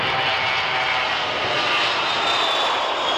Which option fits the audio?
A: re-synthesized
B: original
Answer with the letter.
B